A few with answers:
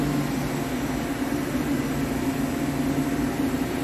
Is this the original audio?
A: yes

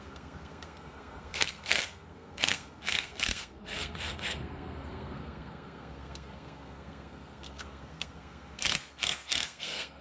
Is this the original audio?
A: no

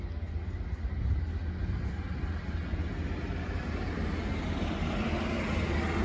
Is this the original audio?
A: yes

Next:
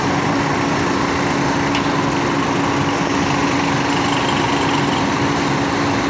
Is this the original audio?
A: yes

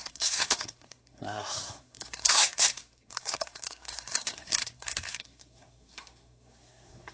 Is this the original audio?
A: no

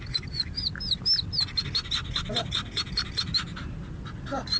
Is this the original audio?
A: yes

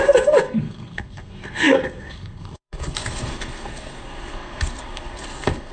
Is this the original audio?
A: no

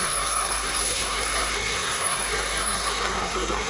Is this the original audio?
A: no